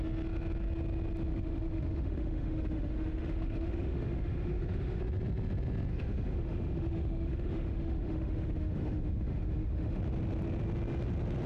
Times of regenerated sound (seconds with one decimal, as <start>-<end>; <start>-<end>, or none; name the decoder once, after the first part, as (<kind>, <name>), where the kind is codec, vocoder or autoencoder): 1.3-5.0 (autoencoder, DAC-VAE); 5.9-10.0